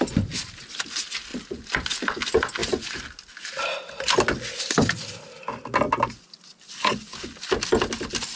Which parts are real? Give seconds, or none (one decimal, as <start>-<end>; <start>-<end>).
0.0-8.4